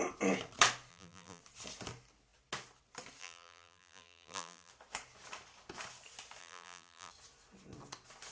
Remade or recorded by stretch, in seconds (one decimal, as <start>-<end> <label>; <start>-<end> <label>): 0.0-0.9 recorded; 0.9-1.4 remade; 1.4-3.2 recorded; 3.2-4.7 remade; 4.7-6.4 recorded; 6.4-7.1 remade; 7.1-8.3 recorded